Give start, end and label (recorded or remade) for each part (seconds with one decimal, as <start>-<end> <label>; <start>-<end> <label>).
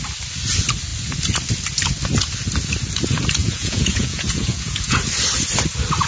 0.0-3.4 recorded; 3.4-5.0 remade; 5.0-6.1 recorded